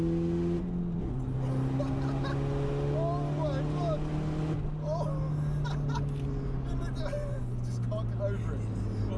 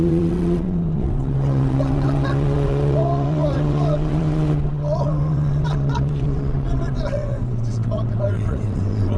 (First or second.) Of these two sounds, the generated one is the second